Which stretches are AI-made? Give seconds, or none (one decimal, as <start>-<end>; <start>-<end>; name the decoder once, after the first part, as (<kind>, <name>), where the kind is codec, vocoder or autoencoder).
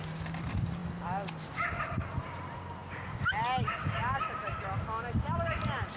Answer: none